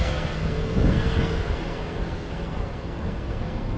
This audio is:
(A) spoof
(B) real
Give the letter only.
A